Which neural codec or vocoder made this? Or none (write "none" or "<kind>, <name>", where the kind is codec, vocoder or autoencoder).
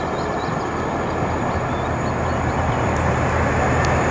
none